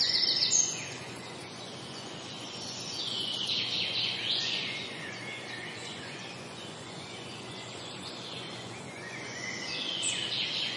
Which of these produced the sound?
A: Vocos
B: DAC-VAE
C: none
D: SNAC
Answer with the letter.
A